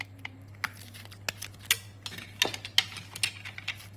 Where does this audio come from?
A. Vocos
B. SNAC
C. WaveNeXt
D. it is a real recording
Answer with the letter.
D